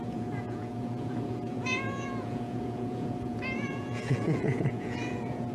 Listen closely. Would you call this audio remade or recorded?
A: remade